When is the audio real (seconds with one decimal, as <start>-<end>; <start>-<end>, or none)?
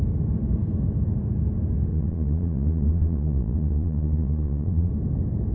0.0-1.9; 4.9-5.5